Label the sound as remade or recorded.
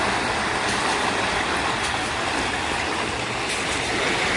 recorded